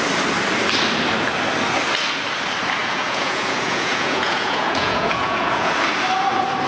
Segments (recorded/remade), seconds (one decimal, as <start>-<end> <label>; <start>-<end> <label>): 0.0-2.8 recorded; 2.8-5.7 remade; 5.7-6.7 recorded